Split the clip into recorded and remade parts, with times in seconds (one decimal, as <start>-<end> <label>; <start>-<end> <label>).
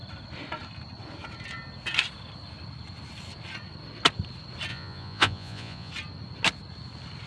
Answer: 0.0-4.7 recorded; 4.7-5.9 remade; 5.9-7.3 recorded